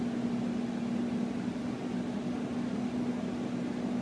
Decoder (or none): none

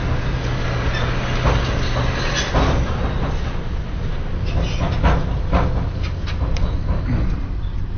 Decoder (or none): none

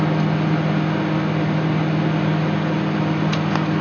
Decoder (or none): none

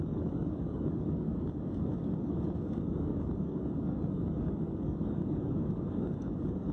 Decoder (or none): codec, DAC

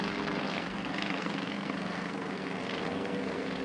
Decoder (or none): codec, SNAC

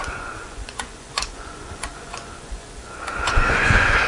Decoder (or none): vocoder, Vocos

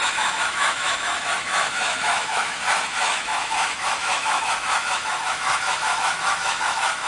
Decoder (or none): autoencoder, DAC-VAE